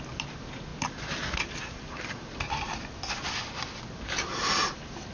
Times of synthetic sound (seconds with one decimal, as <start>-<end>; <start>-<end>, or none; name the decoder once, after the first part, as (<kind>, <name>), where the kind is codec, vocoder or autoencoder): none